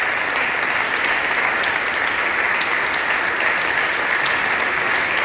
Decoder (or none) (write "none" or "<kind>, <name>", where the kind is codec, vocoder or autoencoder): none